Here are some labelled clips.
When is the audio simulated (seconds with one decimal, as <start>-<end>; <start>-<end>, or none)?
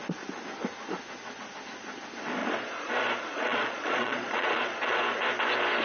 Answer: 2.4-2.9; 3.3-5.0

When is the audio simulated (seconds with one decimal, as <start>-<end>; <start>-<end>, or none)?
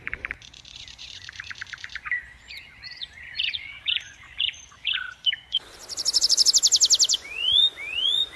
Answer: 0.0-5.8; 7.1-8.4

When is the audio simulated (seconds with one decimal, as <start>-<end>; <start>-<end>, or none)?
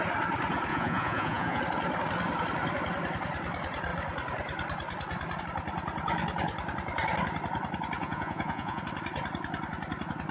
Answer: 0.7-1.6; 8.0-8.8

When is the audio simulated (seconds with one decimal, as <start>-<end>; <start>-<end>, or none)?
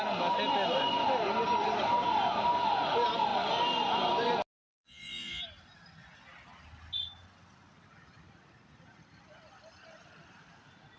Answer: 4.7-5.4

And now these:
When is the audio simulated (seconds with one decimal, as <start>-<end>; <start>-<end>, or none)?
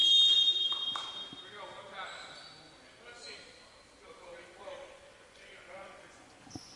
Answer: 4.1-6.8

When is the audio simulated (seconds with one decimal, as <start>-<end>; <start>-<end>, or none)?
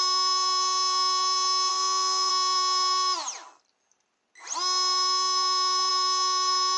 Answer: 1.7-2.3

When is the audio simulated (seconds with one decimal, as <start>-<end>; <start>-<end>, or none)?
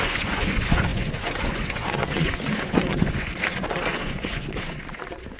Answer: 0.0-5.4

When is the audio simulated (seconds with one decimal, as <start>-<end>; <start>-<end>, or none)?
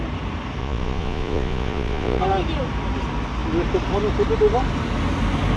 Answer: 0.6-2.2